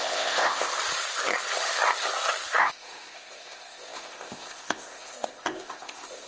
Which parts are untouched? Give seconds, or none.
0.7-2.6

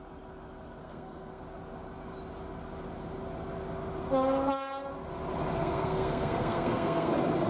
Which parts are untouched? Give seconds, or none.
0.0-0.8; 1.4-5.6; 7.1-7.5

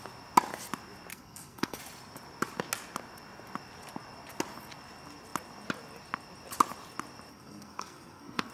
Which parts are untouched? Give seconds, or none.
0.0-1.1; 1.8-7.3

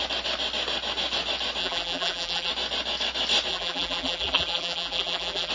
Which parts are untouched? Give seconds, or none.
0.0-1.6; 2.5-3.5